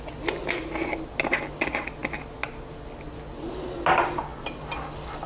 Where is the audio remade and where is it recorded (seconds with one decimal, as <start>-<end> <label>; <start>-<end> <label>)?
0.0-5.3 recorded